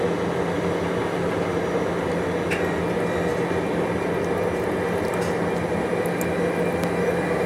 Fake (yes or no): no